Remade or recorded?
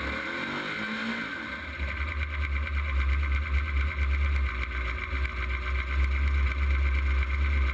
recorded